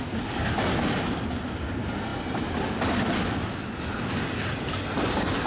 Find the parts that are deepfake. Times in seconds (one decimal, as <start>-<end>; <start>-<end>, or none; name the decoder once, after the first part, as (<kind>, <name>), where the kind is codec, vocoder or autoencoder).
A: none